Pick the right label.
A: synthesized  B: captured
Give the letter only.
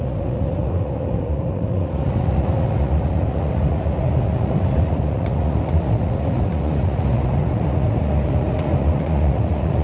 A